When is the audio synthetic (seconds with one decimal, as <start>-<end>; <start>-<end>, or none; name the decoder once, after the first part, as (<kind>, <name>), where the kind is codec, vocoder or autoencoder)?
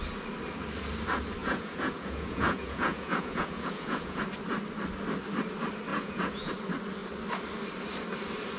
1.4-4.2 (vocoder, Vocos); 5.9-6.5